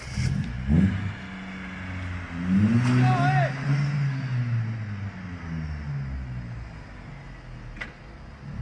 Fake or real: real